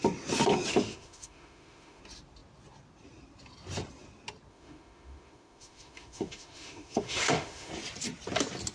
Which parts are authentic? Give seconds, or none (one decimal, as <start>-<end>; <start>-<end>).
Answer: 0.0-0.7; 2.0-4.5; 7.7-8.7